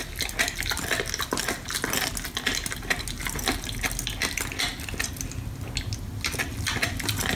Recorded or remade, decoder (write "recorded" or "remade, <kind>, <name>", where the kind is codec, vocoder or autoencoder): recorded